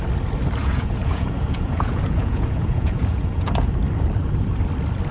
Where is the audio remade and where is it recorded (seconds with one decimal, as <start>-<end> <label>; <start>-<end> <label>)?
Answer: 0.0-0.6 recorded; 0.6-3.7 remade; 3.7-5.1 recorded